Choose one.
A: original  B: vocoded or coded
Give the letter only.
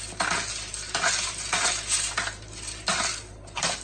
A